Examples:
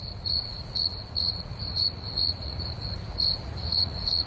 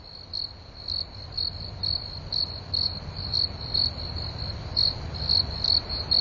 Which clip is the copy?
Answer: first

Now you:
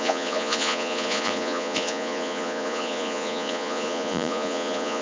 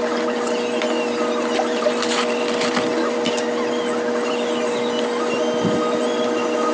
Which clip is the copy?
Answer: first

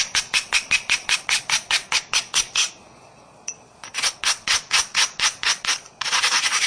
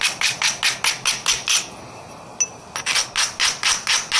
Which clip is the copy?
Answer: first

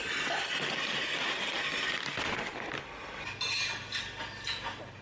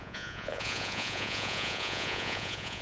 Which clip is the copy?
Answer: second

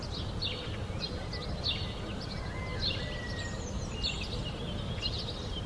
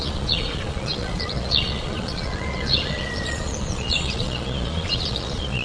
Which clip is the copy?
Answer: second